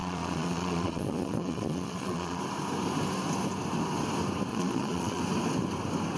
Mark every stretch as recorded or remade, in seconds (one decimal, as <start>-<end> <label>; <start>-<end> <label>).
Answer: 0.0-2.4 remade; 2.4-4.5 recorded; 4.5-5.2 remade; 5.2-6.2 recorded